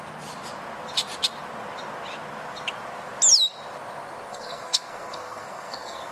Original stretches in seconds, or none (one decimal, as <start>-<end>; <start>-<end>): 0.0-4.3